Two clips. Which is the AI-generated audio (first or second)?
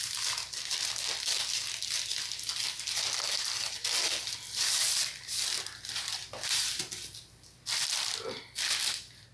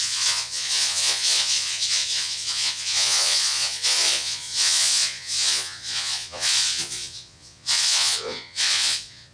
second